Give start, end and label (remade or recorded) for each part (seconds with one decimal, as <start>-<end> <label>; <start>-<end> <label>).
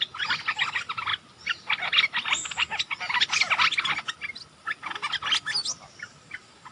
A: 0.0-6.7 recorded